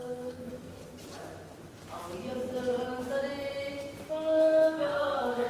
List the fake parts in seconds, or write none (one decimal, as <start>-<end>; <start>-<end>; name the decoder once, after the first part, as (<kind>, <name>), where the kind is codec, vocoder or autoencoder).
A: 0.0-0.8 (codec, SNAC); 4.1-5.5